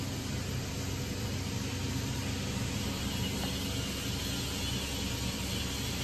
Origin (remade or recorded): recorded